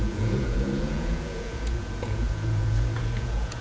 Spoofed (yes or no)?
yes